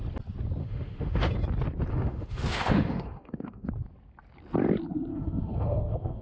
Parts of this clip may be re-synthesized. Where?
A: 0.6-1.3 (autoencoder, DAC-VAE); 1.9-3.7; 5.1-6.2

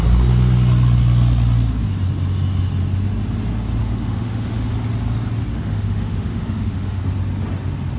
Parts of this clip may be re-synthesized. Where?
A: 3.8-4.7 (autoencoder, DAC-VAE); 5.5-7.0

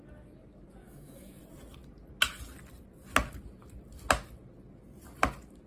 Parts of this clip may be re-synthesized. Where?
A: 0.8-1.4 (autoencoder, DAC-VAE)

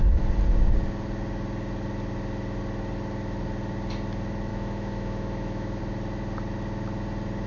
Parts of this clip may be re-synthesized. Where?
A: 4.5-5.8 (autoencoder, DAC-VAE)

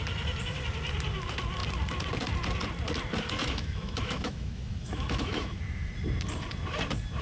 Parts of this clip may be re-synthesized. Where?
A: 3.4-5.6 (autoencoder, DAC-VAE)

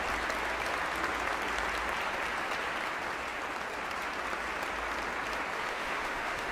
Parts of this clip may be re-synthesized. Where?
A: 5.7-6.5 (autoencoder, DAC-VAE)

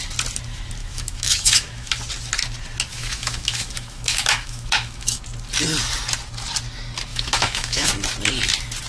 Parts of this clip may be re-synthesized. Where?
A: 0.8-1.9 (autoencoder, DAC-VAE); 2.9-5.2; 7.1-7.9

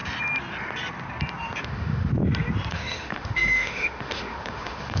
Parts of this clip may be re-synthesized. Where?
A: 1.6-2.1 (autoencoder, DAC-VAE); 2.7-5.0